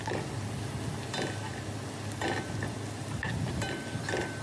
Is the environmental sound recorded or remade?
recorded